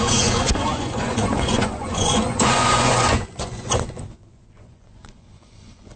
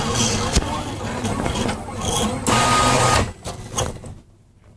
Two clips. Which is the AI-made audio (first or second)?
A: first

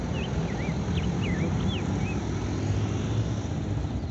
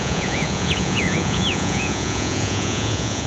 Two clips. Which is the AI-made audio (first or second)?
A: second